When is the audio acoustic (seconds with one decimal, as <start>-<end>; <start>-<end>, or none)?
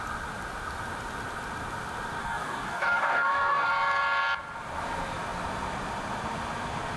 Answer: 0.0-2.2; 3.7-7.0